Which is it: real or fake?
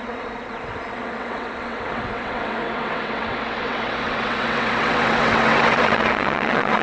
fake